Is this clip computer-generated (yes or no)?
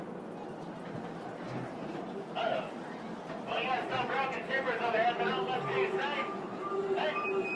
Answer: no